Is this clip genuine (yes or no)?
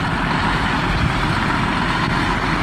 yes